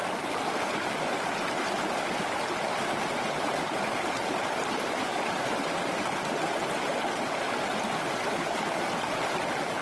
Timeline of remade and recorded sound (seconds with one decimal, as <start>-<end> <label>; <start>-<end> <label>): 0.0-9.8 recorded

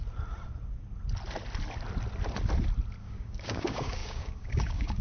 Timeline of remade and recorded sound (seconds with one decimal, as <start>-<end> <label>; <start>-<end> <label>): 0.0-3.0 recorded; 3.0-5.0 remade

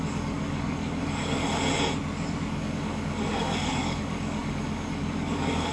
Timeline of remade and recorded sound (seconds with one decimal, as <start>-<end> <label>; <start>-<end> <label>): 0.0-1.4 remade; 1.4-2.5 recorded; 2.5-5.7 remade

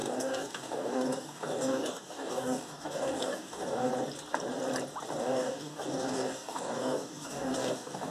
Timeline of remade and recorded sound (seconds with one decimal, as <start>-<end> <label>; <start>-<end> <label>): 0.0-3.9 remade; 3.9-5.2 recorded; 5.2-8.1 remade